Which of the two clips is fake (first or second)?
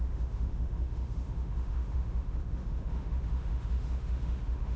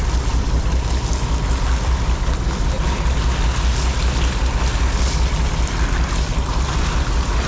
first